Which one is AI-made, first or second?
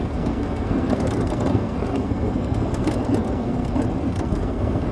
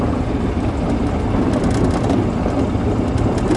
first